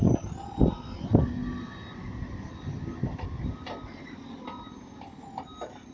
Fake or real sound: real